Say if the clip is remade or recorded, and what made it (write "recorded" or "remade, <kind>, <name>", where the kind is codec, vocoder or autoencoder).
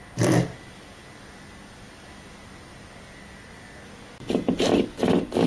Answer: recorded